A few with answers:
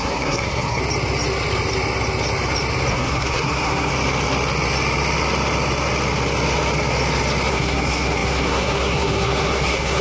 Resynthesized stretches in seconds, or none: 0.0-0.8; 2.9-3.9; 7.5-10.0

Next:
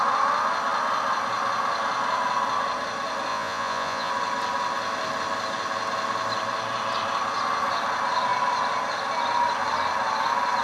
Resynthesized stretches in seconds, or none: 3.3-4.1

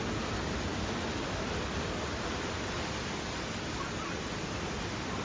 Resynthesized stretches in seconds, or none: none